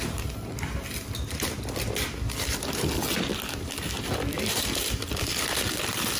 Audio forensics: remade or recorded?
recorded